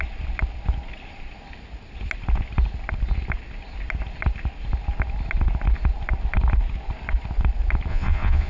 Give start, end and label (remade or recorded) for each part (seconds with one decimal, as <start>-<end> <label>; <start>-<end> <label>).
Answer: 0.0-7.9 recorded; 7.9-8.5 remade